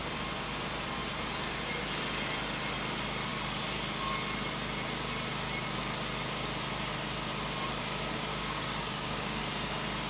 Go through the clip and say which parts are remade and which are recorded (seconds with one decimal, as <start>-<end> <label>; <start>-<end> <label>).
0.0-8.3 recorded; 8.3-9.4 remade; 9.4-10.1 recorded